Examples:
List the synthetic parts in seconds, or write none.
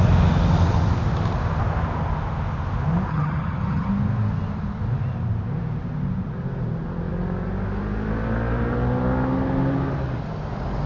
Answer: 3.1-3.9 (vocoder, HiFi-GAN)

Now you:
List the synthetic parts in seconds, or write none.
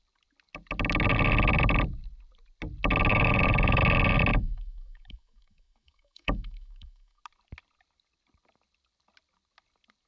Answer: 3.1-3.8 (autoencoder, DAC-VAE); 4.3-7.2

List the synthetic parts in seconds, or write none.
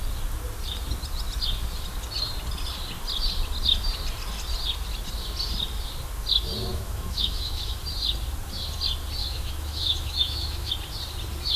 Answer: 6.7-7.8 (autoencoder, DAC-VAE); 9.2-10.7